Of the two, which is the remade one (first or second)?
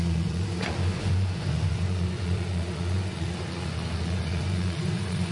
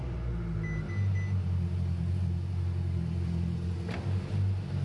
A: first